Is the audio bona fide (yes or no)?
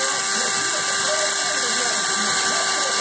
yes